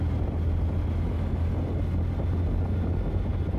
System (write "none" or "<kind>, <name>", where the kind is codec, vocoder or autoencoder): none